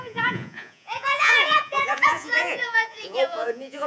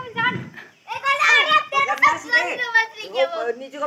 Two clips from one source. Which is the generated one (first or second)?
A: first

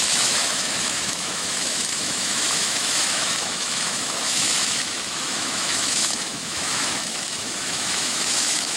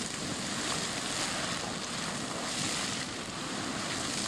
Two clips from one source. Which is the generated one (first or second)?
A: first